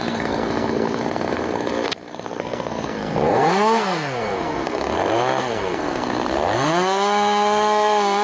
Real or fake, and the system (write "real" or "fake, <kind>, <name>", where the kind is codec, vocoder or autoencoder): fake, codec, SNAC